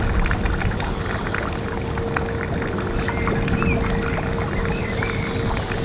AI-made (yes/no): no